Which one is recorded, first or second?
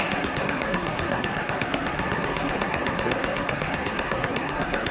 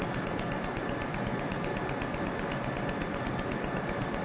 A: second